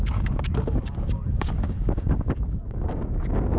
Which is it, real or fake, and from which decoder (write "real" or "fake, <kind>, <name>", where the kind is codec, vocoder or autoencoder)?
fake, codec, DAC